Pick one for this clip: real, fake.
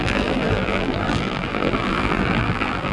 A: fake